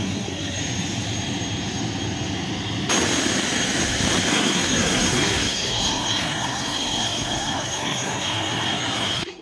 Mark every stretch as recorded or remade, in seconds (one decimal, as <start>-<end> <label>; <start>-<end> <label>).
0.0-0.6 remade; 0.6-4.3 recorded; 4.3-9.4 remade